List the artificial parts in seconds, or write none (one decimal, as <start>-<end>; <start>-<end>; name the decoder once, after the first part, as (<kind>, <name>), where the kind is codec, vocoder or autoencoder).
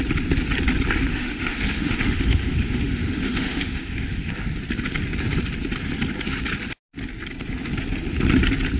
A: 1.1-4.3 (autoencoder, DAC-VAE)